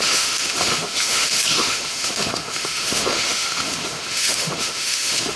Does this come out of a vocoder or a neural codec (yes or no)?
yes